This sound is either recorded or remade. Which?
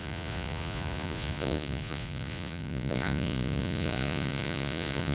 remade